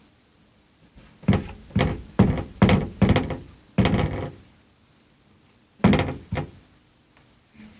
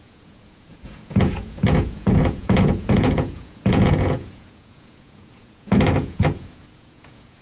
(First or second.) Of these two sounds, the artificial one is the second